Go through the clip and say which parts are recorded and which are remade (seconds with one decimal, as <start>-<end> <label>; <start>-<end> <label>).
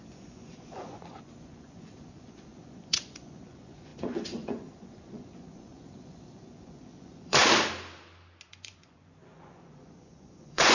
0.0-7.4 remade; 7.4-8.5 recorded; 8.5-10.7 remade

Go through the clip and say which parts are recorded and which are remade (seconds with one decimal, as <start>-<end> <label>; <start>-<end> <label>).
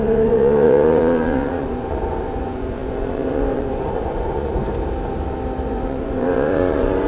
0.0-4.6 remade; 4.6-5.7 recorded; 5.7-7.1 remade